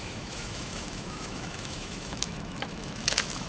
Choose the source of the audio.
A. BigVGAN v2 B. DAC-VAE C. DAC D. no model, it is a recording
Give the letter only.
B